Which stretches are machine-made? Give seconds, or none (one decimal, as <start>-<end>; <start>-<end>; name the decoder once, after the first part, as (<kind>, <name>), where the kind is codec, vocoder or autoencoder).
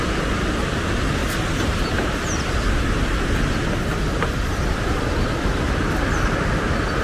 1.2-2.5 (vocoder, BigVGAN v2); 3.9-5.7